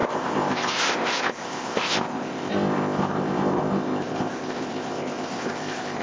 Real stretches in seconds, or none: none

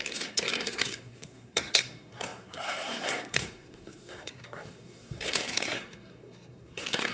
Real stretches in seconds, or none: none

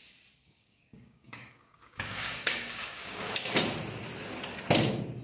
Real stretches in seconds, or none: 0.0-0.4; 3.5-5.2

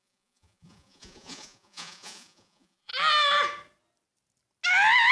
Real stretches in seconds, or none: 2.9-5.1

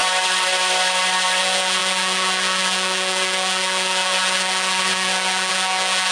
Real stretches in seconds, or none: 0.0-1.4

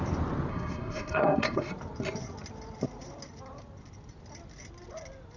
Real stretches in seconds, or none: 0.0-0.5; 1.7-5.4

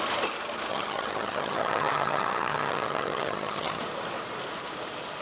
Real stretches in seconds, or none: 0.0-0.7; 3.8-5.2

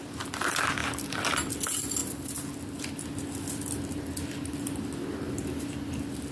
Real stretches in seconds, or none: 0.0-0.8; 1.5-6.3